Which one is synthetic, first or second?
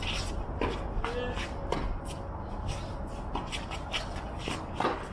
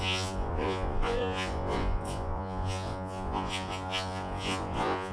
second